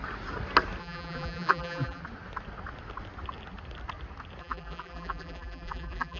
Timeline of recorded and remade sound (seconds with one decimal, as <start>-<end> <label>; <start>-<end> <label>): 0.0-0.8 recorded; 0.8-2.0 remade; 2.0-4.4 recorded; 4.4-6.2 remade